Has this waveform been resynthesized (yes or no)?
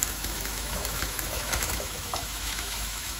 yes